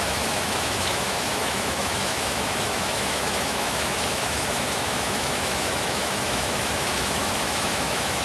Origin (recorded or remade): remade